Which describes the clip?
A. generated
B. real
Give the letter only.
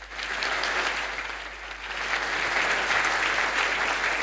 B